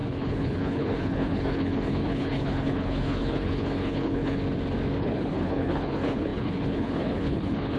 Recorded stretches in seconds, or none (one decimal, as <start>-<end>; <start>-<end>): 4.4-5.0